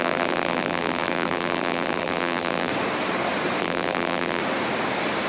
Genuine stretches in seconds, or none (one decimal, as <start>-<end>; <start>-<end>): 2.7-3.6; 4.4-5.3